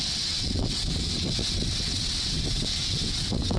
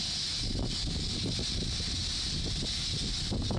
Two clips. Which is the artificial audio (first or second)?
first